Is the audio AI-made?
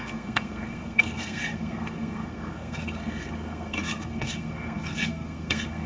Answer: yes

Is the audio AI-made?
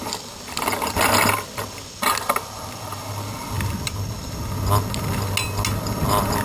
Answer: no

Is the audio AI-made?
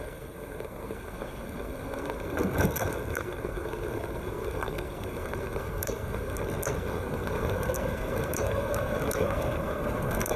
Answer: yes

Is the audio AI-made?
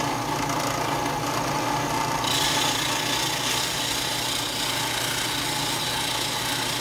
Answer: no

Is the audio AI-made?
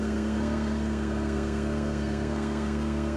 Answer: yes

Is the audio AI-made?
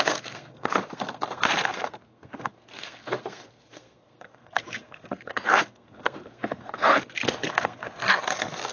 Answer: yes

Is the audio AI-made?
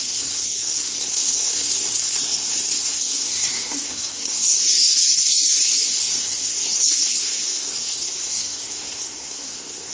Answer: yes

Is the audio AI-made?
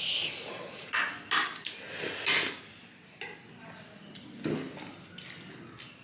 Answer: no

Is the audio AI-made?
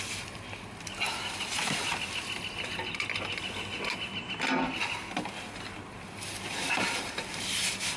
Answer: no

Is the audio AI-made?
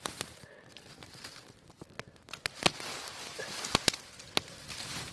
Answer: no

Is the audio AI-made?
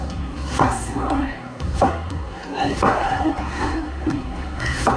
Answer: yes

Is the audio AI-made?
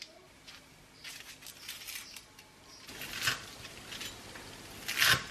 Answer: no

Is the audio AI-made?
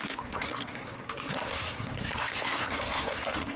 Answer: yes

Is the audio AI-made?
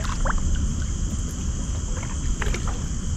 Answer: no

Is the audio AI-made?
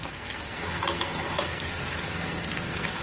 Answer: yes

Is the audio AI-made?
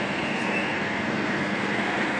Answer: yes